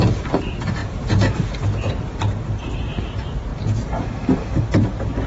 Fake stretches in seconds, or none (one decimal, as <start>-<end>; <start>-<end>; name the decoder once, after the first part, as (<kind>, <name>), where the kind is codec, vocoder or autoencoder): 0.8-1.4 (vocoder, Vocos)